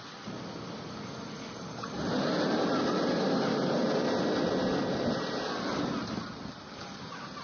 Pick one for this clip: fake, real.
real